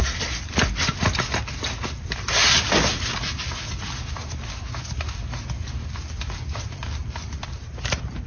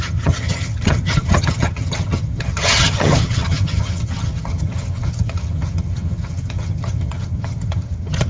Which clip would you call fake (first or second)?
second